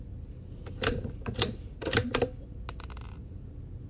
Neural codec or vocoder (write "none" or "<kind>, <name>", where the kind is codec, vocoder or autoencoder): none